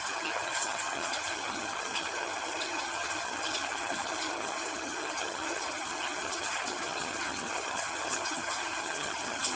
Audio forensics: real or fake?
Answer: fake